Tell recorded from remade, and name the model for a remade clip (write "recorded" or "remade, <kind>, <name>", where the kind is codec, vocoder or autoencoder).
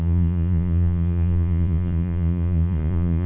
remade, vocoder, Vocos